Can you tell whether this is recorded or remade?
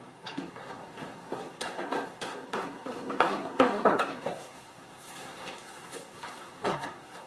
remade